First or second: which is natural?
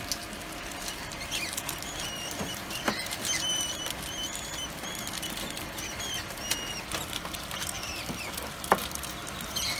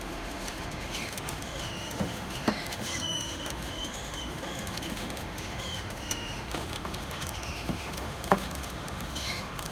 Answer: first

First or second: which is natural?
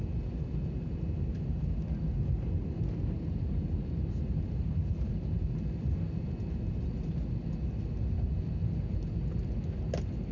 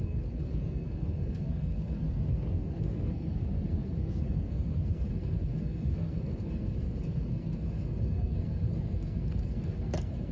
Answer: first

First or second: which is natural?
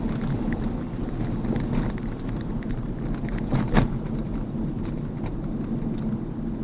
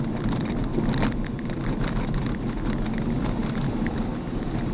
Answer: first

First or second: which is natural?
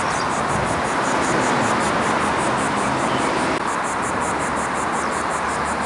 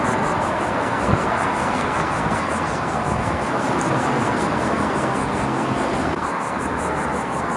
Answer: first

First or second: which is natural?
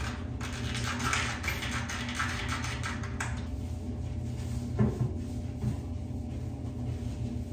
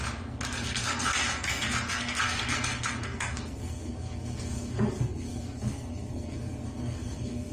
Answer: first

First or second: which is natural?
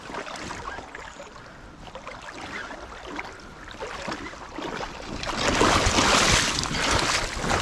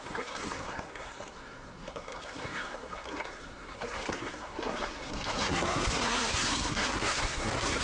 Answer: first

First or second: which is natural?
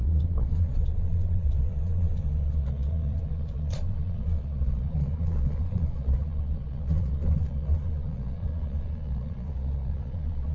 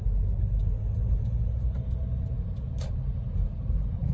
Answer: second